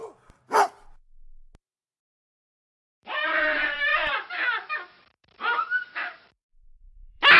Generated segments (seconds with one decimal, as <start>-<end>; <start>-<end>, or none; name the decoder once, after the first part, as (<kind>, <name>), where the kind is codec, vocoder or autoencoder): 3.0-7.4 (vocoder, BigVGAN v2)